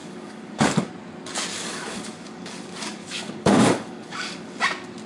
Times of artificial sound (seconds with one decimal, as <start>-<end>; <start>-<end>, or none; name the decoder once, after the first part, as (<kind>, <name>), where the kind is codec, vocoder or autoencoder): 0.0-0.9 (codec, DAC); 1.5-4.6